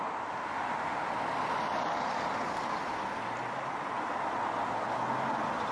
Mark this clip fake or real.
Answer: real